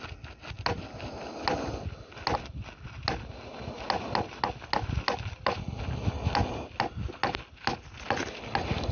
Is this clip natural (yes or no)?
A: yes